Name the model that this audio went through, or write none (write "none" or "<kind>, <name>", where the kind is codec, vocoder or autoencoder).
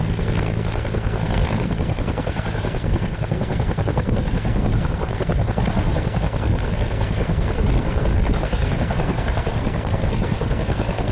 codec, SNAC